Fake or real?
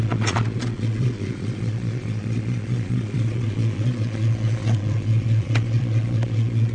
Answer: fake